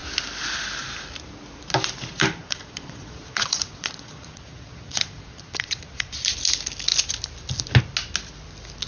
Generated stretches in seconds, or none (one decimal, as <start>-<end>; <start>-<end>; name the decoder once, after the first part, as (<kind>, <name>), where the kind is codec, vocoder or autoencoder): 2.4-6.2 (vocoder, Vocos)